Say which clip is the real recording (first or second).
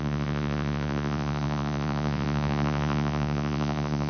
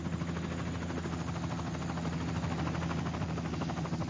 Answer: second